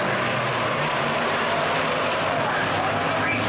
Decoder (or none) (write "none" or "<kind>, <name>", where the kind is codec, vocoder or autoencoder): vocoder, BigVGAN v2